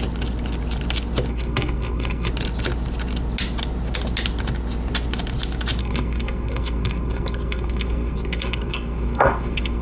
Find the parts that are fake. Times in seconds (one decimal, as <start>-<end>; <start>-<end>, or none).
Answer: 1.3-2.3; 5.8-9.8